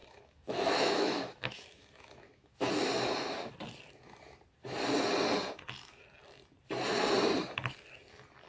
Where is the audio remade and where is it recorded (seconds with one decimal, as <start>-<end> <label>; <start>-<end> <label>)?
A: 0.0-2.7 remade; 2.7-8.5 recorded